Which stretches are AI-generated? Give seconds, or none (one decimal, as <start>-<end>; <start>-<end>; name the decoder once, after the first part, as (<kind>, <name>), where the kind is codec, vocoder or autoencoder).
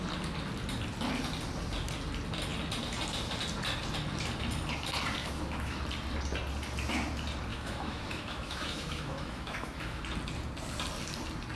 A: 5.2-5.8 (autoencoder, DAC-VAE); 7.5-10.0